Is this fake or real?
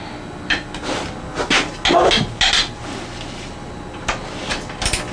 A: real